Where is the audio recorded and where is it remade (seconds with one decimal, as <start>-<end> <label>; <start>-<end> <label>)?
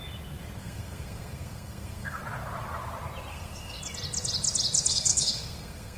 0.0-0.6 recorded; 0.6-2.2 remade; 2.2-3.3 recorded; 3.3-3.8 remade; 3.8-4.9 recorded; 4.9-6.0 remade